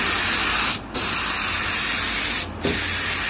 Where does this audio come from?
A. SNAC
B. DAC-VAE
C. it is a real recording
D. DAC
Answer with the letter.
C